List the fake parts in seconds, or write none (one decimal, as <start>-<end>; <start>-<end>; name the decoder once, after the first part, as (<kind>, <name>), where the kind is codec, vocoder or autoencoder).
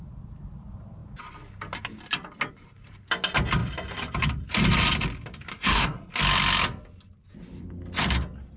5.5-6.1 (codec, SNAC)